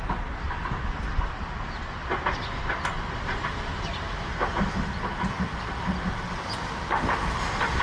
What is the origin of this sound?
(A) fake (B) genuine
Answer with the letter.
B